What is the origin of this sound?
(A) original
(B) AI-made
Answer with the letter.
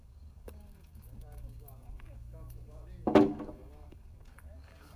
B